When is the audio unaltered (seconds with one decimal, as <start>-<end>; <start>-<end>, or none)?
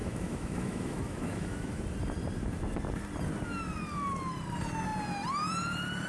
1.8-6.1